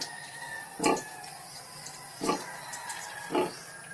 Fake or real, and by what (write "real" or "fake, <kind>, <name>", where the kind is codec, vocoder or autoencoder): real